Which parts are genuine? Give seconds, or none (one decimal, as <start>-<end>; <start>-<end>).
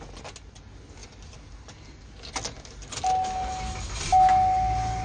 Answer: 0.0-5.0